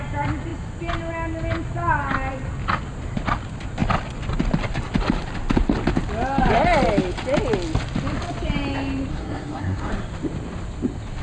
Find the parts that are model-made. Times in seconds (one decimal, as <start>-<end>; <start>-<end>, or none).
9.1-9.9